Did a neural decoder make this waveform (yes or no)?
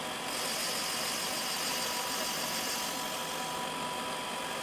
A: no